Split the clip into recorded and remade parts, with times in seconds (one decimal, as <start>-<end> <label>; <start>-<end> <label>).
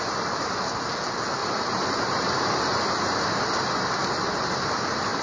0.0-1.4 recorded; 1.4-2.6 remade; 2.6-5.2 recorded